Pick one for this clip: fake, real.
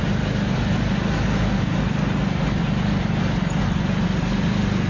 real